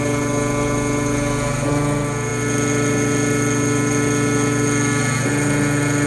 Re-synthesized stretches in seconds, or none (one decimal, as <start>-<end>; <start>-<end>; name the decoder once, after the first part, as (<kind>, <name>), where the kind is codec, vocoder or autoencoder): none